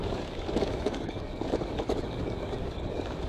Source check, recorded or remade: remade